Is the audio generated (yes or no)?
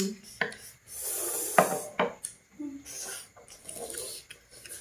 no